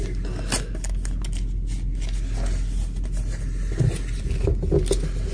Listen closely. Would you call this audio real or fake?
real